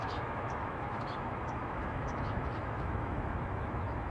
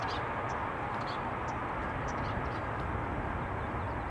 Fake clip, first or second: first